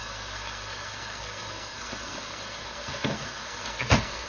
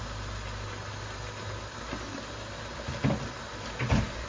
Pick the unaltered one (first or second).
second